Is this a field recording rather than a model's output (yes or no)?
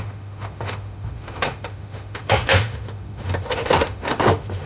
no